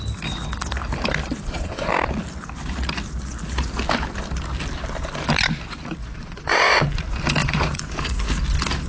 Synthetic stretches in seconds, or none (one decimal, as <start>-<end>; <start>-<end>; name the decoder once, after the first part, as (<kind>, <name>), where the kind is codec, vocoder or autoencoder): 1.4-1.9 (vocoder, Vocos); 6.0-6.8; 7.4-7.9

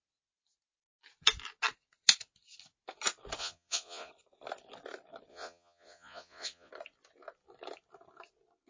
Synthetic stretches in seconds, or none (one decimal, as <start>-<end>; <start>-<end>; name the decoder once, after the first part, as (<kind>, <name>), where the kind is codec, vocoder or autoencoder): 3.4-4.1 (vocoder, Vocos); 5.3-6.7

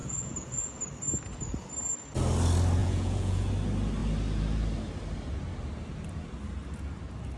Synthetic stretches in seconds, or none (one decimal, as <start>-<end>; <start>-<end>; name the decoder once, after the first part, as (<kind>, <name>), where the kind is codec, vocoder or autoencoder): 0.0-0.8 (vocoder, Vocos); 2.8-3.5

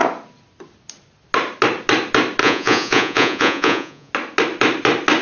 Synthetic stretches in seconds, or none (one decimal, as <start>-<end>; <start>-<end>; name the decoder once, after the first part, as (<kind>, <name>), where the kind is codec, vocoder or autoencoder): 2.4-4.1 (vocoder, Vocos)

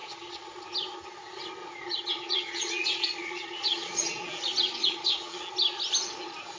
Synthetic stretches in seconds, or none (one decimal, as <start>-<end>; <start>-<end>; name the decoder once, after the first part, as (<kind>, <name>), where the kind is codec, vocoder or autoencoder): 0.0-0.6 (vocoder, Vocos); 1.6-4.3; 4.8-5.4

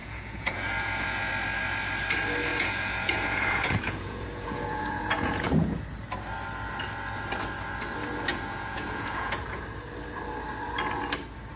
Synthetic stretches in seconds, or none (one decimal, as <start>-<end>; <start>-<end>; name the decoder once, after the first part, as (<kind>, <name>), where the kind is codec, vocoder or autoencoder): 0.0-1.3 (vocoder, Vocos); 2.5-5.8; 8.3-9.6

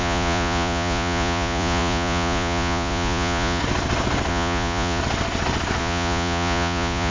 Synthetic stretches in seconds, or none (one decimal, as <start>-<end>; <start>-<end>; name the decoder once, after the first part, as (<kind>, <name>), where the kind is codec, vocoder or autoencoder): 0.0-3.6 (vocoder, Vocos); 4.3-5.0; 5.8-7.1

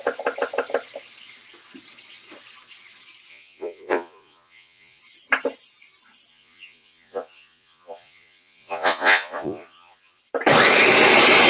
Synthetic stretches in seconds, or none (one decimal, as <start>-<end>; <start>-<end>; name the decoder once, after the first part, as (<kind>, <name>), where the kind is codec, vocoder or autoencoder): 3.3-5.0 (vocoder, Vocos); 6.3-10.2